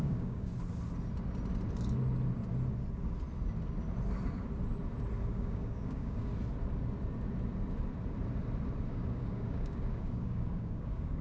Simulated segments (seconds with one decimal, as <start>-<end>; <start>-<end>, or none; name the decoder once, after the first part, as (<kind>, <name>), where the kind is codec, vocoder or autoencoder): 0.0-0.5 (codec, DAC); 5.4-6.3; 8.9-11.2